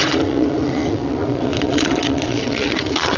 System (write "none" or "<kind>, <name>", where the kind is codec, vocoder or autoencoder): vocoder, Vocos